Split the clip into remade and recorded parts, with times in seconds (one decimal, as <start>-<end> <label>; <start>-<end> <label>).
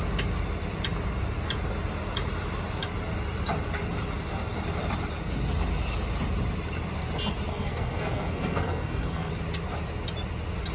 0.0-7.5 recorded; 7.5-9.3 remade; 9.3-10.7 recorded